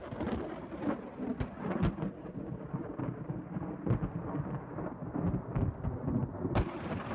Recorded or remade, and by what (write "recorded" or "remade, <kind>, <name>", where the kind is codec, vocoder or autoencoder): recorded